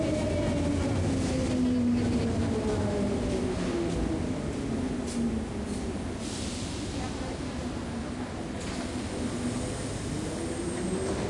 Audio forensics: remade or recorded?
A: recorded